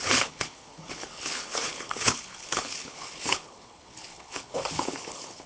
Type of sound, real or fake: fake